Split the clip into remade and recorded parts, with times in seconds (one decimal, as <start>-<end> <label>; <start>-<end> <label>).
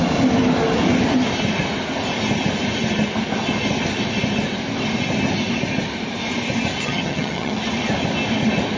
0.0-6.8 recorded; 6.8-7.6 remade; 7.6-8.8 recorded